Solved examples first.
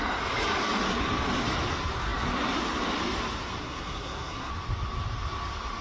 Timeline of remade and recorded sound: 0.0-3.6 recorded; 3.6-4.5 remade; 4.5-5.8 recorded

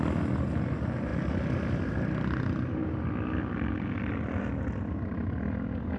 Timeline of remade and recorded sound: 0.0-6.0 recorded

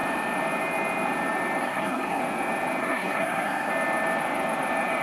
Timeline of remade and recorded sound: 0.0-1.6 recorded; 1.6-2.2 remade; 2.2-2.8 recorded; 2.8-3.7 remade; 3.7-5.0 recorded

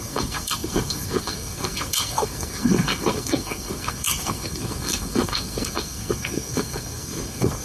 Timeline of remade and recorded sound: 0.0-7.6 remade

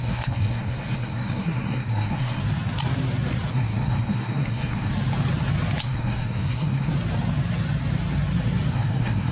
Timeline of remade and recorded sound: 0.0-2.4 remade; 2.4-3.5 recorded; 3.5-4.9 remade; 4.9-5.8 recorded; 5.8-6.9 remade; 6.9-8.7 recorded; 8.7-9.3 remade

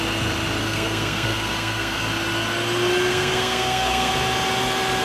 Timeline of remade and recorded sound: 0.0-0.6 recorded; 0.6-2.1 remade; 2.1-3.1 recorded; 3.1-4.1 remade; 4.1-5.0 recorded